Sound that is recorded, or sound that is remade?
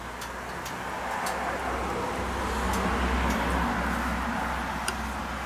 recorded